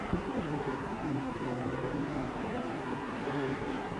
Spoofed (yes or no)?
yes